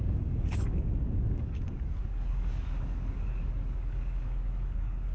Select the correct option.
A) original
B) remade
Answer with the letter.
B